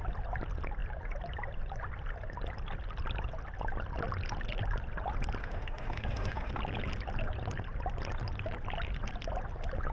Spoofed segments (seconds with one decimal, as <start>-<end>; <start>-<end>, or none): 5.4-6.5